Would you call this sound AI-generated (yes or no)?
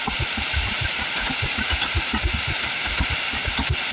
no